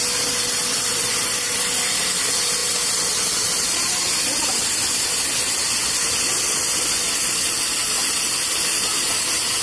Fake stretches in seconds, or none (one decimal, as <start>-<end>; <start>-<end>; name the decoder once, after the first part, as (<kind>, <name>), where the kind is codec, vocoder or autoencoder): none